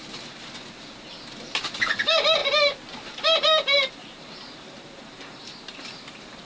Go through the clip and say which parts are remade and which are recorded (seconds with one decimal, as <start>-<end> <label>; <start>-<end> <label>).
0.0-2.4 recorded; 2.4-6.4 remade